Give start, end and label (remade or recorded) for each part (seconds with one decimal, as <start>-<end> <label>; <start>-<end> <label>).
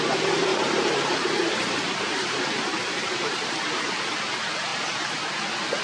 0.0-0.5 recorded; 0.5-4.0 remade; 4.0-5.8 recorded